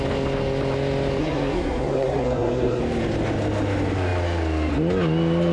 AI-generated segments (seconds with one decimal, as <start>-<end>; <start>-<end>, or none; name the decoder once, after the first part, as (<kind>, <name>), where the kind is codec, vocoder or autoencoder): 1.2-2.8 (codec, SNAC)